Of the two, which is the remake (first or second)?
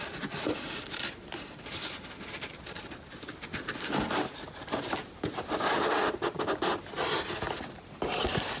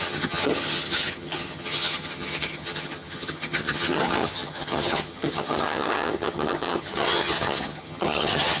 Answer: second